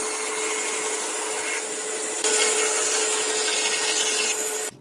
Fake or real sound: real